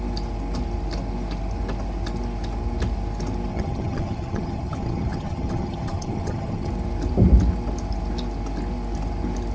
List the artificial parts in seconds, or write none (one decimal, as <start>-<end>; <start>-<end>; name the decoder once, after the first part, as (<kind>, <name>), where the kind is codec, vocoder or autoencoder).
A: 3.5-6.7 (vocoder, HiFi-GAN)